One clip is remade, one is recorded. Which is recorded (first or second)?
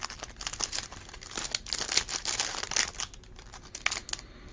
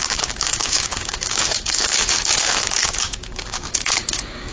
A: first